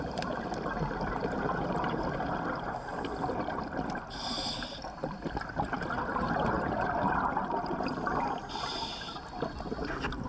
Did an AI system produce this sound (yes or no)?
no